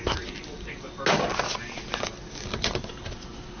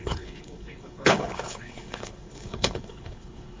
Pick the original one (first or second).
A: first